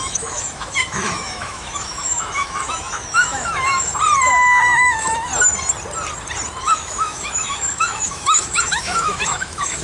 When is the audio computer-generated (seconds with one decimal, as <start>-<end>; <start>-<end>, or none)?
0.0-3.9; 4.6-5.3; 6.6-9.8